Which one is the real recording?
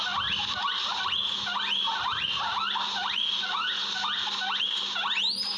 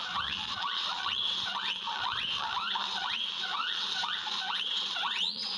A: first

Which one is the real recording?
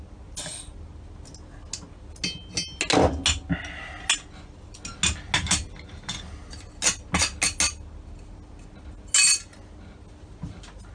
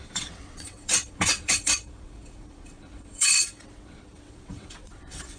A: first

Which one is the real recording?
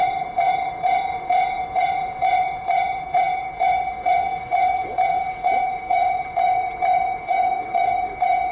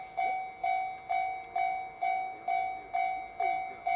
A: second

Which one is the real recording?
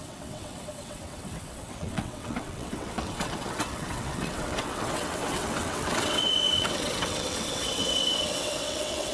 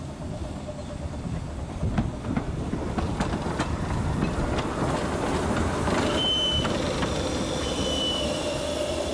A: second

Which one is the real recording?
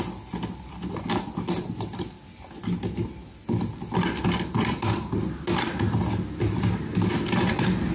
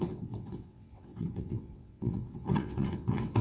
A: first